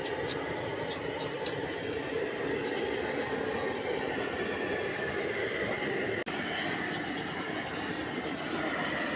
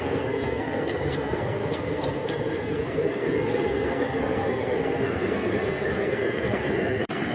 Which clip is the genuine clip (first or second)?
first